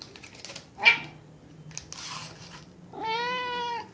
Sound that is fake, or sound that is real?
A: real